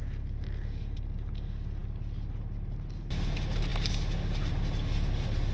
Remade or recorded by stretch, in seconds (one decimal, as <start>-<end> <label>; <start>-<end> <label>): 0.0-5.5 recorded